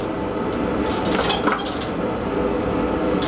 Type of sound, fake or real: real